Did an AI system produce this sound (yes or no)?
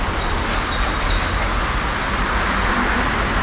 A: no